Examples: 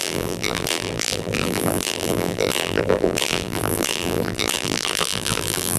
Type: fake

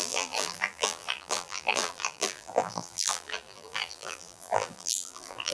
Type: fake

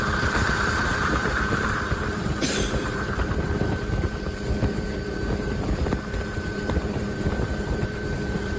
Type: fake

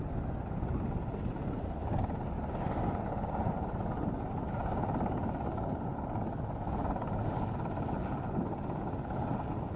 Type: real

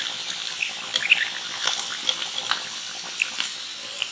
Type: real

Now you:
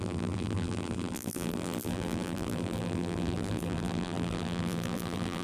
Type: fake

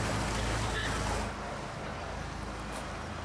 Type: real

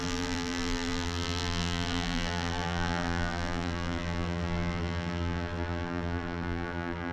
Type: fake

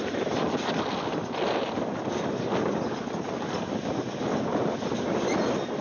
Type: real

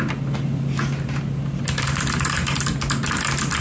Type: real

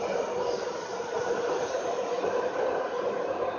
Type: real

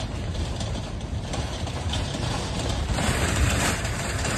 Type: fake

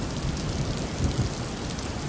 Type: real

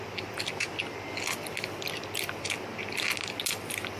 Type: real